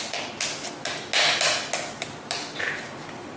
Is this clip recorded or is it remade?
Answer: recorded